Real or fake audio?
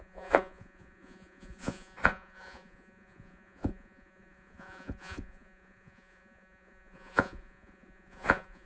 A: fake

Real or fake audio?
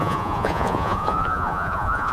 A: fake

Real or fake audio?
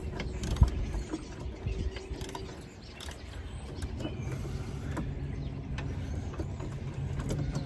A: real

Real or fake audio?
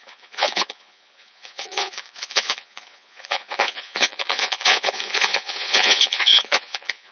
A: fake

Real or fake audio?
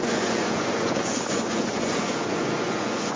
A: fake